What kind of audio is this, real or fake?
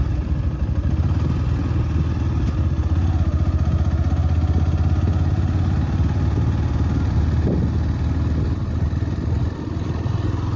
real